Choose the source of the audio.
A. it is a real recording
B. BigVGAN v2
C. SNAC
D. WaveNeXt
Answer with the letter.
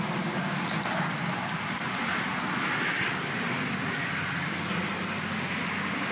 A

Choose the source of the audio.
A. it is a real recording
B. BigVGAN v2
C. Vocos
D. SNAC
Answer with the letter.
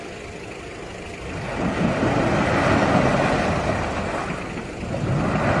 A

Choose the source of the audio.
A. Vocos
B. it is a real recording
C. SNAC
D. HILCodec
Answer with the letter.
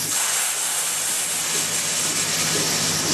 B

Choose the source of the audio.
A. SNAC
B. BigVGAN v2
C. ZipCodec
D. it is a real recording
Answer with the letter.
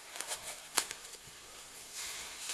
A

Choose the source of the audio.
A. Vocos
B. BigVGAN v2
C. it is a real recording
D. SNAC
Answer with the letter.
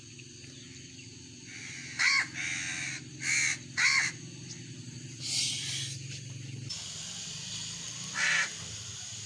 C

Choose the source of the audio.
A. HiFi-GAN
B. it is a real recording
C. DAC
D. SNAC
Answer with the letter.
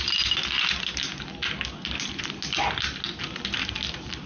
B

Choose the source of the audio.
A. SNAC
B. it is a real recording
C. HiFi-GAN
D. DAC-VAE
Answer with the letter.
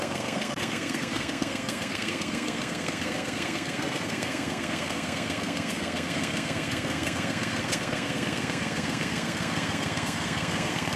A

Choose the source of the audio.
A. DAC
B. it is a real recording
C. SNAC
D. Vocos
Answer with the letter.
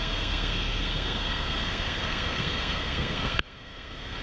C